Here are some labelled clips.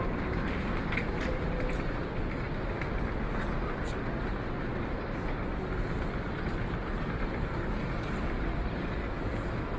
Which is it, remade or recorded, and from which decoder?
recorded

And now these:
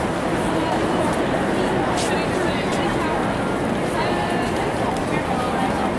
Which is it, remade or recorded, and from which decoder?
recorded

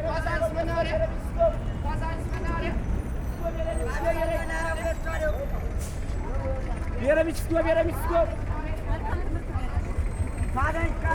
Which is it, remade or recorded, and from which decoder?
recorded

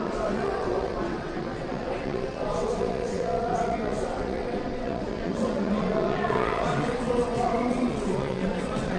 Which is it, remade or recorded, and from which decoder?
remade, vocoder, WaveNeXt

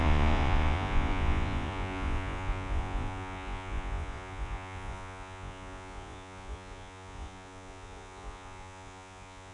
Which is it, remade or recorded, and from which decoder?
remade, vocoder, Vocos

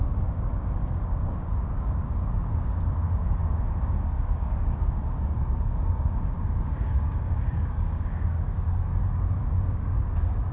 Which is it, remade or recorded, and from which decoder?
remade, codec, DAC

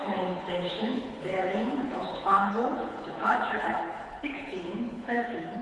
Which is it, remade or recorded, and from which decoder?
remade, codec, HILCodec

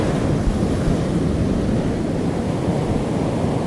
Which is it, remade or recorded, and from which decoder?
recorded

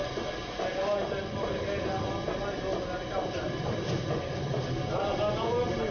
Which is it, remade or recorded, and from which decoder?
recorded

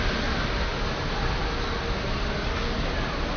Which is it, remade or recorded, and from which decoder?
recorded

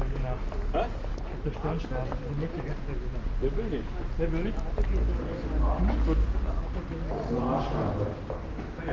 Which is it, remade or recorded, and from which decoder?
recorded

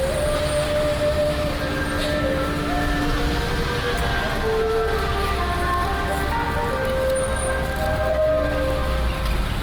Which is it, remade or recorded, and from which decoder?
recorded